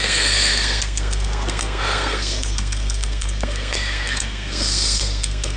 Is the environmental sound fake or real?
fake